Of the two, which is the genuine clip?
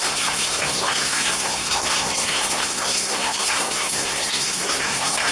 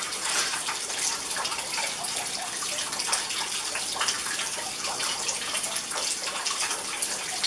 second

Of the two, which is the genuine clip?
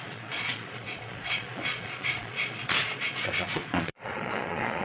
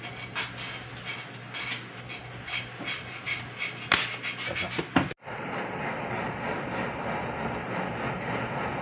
second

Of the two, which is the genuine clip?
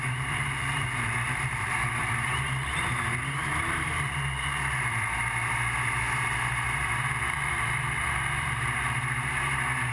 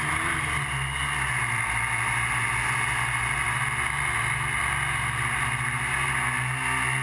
second